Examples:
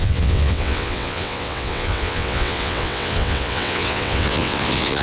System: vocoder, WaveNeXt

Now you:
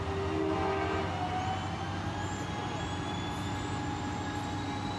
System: none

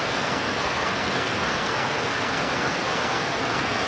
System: codec, SNAC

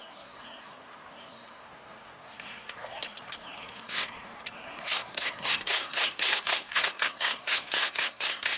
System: codec, SNAC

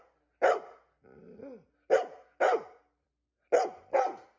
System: none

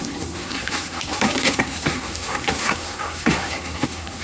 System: codec, SNAC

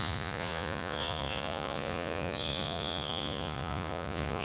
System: vocoder, Vocos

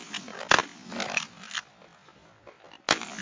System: none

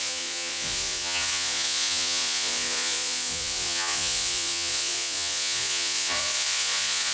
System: vocoder, Vocos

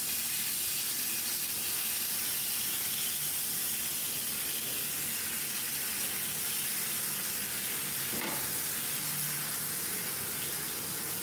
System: none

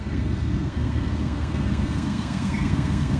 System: codec, SNAC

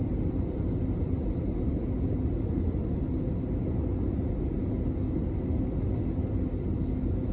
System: none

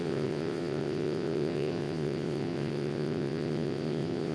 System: vocoder, WaveNeXt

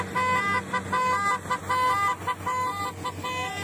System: none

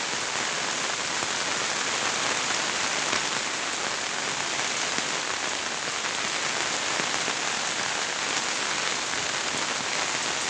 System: none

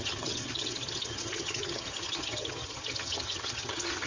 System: vocoder, HiFi-GAN